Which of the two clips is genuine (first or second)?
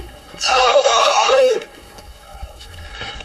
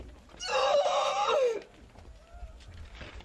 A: second